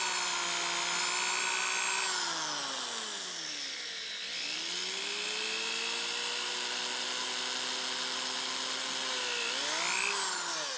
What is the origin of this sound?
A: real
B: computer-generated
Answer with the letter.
A